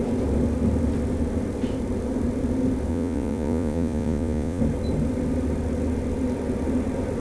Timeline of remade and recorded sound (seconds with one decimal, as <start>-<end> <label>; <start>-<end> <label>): 0.0-2.9 recorded; 2.9-4.6 remade; 4.6-7.2 recorded